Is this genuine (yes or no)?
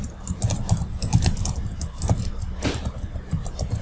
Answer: yes